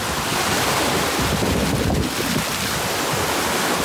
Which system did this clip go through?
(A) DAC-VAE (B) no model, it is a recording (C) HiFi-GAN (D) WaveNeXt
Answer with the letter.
B